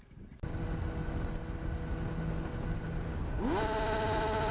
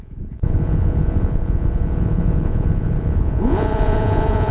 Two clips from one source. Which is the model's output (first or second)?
second